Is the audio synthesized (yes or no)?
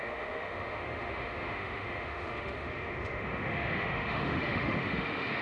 yes